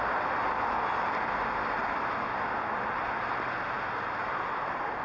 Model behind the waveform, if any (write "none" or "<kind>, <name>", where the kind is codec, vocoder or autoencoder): none